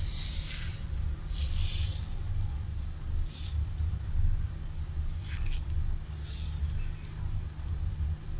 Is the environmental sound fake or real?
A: real